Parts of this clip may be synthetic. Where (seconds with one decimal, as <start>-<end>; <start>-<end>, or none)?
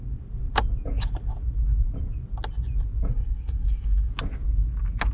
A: 3.1-4.1